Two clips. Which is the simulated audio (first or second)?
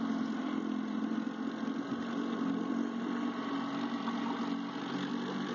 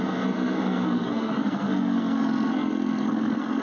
second